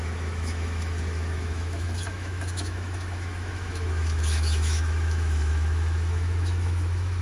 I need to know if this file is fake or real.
fake